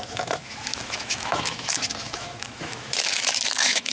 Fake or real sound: fake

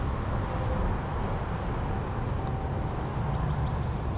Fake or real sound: real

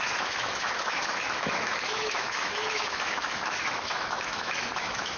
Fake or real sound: fake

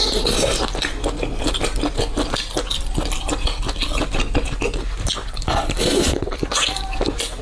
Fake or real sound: real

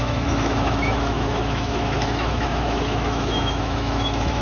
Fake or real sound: fake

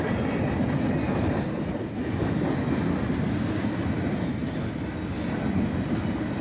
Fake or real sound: real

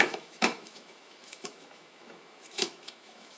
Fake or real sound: fake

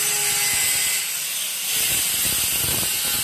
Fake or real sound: real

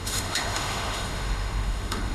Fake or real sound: fake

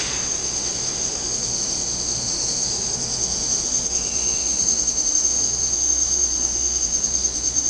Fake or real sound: fake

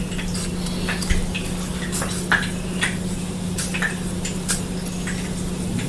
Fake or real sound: real